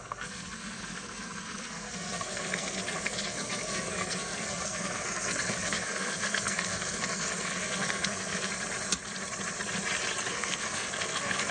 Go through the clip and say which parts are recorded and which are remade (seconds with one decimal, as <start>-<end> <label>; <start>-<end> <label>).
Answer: 0.0-8.5 remade; 8.5-10.3 recorded; 10.3-11.5 remade